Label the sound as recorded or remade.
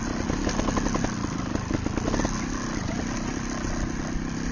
recorded